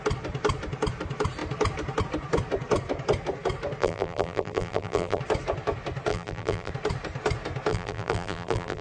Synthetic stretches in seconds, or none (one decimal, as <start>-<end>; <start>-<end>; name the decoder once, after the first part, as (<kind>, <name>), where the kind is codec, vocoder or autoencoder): 3.8-5.2 (vocoder, BigVGAN v2); 6.1-6.7; 7.7-8.8